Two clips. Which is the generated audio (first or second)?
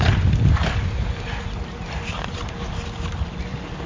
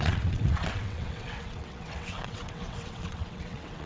second